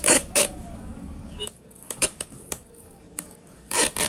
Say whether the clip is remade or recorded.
remade